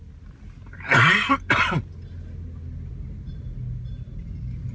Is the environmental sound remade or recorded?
recorded